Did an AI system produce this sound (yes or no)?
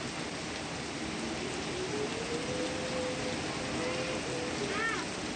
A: no